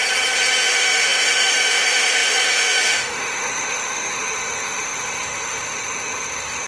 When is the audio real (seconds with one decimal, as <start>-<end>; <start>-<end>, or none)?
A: 0.0-0.6